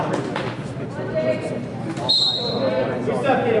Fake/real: fake